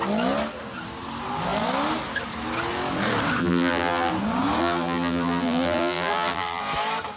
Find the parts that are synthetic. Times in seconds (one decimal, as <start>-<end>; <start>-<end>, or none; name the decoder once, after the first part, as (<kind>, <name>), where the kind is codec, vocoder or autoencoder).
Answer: 3.4-4.1 (vocoder, BigVGAN v2); 4.6-6.6